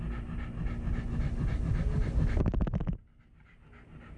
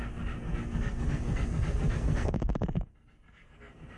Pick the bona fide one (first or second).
first